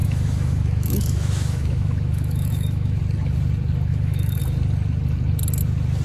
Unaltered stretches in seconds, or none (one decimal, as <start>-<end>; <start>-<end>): 3.0-3.9; 4.4-6.0